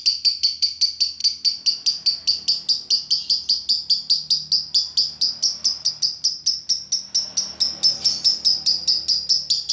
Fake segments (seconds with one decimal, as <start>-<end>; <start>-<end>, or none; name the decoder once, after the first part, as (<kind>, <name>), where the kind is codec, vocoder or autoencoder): none